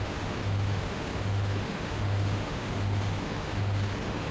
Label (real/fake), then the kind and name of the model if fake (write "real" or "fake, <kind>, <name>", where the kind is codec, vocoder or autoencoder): fake, autoencoder, DAC-VAE